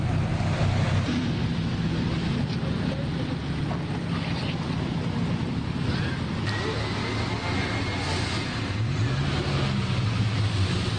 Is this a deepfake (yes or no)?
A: no